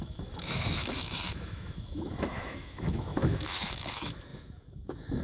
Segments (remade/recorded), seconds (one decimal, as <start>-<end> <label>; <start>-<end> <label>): 0.0-5.2 remade